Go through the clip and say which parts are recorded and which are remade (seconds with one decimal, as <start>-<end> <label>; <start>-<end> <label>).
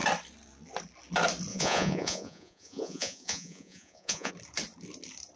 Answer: 0.0-1.5 recorded; 1.5-4.3 remade; 4.3-5.4 recorded